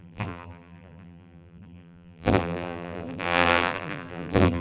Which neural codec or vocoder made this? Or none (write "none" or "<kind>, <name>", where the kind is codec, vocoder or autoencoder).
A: vocoder, BigVGAN v2